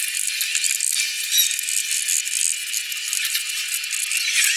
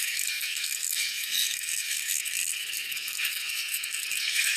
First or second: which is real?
first